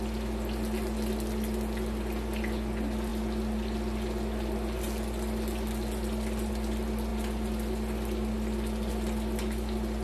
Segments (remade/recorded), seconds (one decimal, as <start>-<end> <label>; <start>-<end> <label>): 0.0-10.0 recorded